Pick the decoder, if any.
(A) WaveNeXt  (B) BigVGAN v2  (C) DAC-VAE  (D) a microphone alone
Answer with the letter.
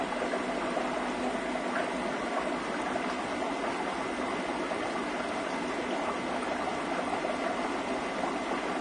D